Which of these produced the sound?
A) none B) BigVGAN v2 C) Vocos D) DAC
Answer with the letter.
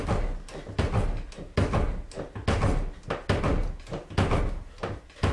A